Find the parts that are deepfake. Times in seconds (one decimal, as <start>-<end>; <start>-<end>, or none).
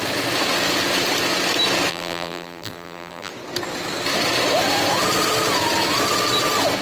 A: 1.9-3.3